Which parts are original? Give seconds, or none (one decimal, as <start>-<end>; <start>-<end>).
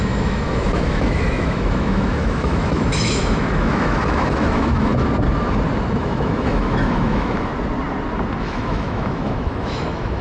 4.9-6.0; 7.5-8.4